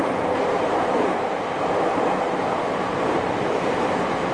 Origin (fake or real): fake